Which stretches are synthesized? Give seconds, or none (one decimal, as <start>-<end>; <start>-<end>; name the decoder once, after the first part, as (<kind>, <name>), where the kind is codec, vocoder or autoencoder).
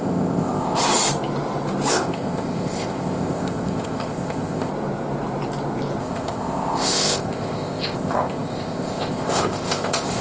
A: 0.0-0.8 (codec, ZipCodec); 1.9-4.7; 6.0-10.2